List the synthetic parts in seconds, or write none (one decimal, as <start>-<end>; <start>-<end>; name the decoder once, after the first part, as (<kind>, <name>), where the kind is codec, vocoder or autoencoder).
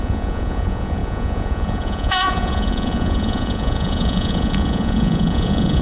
0.0-5.8 (vocoder, Vocos)